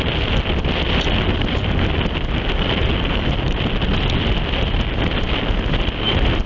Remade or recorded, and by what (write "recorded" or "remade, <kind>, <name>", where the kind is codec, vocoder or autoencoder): recorded